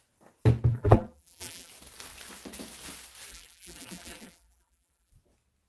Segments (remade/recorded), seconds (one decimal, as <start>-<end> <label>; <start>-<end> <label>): 0.0-0.7 recorded; 0.7-1.7 remade; 1.7-3.3 recorded; 3.3-5.1 remade; 5.1-5.7 recorded